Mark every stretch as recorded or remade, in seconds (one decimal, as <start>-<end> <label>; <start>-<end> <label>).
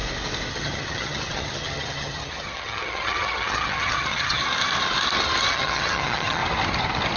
0.0-0.5 recorded; 0.5-4.4 remade; 4.4-5.5 recorded; 5.5-6.4 remade; 6.4-7.2 recorded